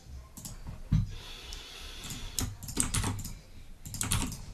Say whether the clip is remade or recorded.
recorded